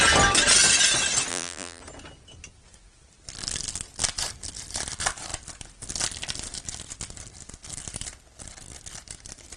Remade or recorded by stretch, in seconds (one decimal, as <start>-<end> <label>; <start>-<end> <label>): 0.0-1.3 recorded; 1.3-1.8 remade; 1.8-9.6 recorded

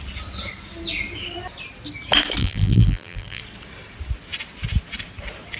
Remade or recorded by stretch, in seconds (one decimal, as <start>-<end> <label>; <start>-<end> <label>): 0.0-2.4 recorded; 2.4-3.4 remade; 3.4-5.6 recorded

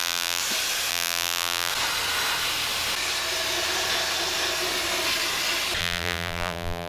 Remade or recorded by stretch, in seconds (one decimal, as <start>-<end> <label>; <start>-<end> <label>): 0.0-0.4 remade; 0.4-0.9 recorded; 0.9-1.7 remade; 1.7-5.8 recorded; 5.8-6.9 remade

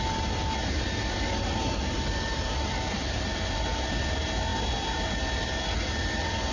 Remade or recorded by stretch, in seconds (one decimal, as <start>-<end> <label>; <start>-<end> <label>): 0.0-6.5 recorded

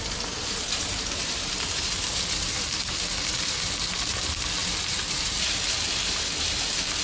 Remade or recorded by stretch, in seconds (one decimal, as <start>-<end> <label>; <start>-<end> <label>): 0.0-0.4 recorded; 0.4-2.7 remade; 2.7-4.6 recorded; 4.6-5.4 remade; 5.4-7.0 recorded

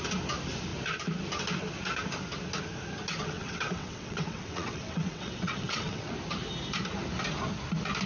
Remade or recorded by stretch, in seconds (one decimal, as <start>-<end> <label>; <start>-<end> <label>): 0.0-3.2 recorded; 3.2-6.1 remade; 6.1-8.1 recorded